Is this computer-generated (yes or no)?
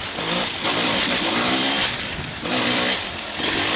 yes